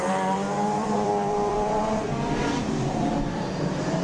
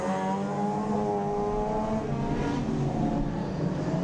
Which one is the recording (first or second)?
second